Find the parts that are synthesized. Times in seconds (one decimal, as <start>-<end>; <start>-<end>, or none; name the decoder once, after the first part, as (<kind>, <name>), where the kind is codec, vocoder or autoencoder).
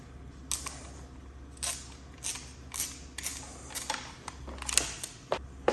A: none